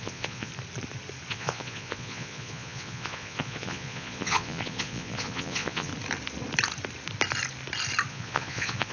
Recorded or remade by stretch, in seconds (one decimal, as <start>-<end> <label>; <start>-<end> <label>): 0.0-0.5 remade; 0.5-1.3 recorded; 1.3-5.9 remade; 5.9-8.1 recorded; 8.1-8.9 remade